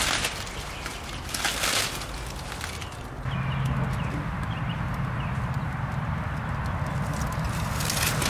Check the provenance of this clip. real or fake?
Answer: real